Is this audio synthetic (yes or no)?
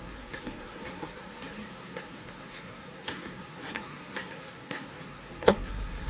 yes